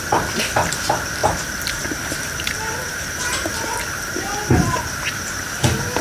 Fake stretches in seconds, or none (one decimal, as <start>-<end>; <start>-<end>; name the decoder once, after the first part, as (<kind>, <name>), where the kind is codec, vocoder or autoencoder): 1.2-4.8 (vocoder, BigVGAN v2)